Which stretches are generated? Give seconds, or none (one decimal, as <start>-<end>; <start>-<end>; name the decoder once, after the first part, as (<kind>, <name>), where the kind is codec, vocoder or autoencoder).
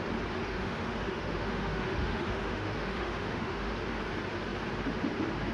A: 0.4-3.7 (autoencoder, DAC-VAE)